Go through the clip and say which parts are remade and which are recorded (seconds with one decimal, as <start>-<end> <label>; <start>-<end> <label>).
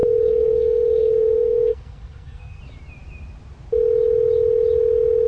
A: 0.0-2.6 remade; 2.6-5.3 recorded